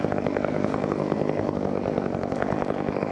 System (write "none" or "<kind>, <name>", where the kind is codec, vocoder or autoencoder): codec, SNAC